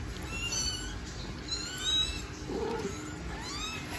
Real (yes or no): yes